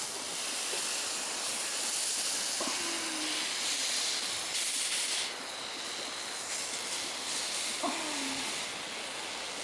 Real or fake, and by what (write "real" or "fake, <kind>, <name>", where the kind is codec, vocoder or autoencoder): real